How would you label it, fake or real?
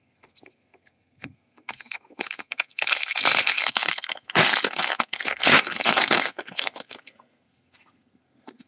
fake